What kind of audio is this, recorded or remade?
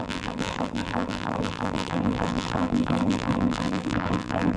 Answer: remade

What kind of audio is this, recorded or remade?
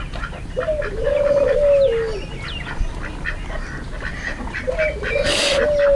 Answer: recorded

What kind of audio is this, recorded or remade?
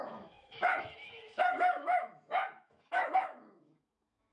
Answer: remade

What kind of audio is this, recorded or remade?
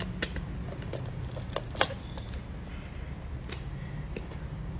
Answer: recorded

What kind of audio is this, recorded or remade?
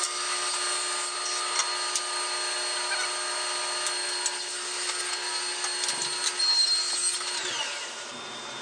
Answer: recorded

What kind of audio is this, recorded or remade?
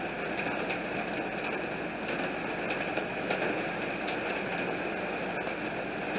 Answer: recorded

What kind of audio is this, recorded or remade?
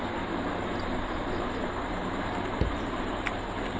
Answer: recorded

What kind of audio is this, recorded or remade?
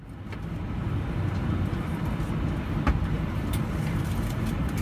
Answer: recorded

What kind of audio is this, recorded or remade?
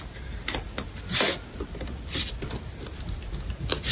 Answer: recorded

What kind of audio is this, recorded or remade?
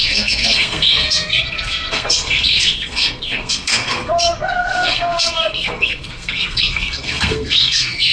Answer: remade